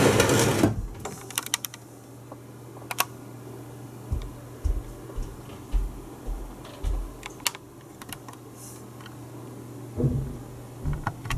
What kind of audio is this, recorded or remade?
recorded